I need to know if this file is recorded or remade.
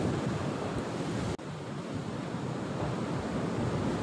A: recorded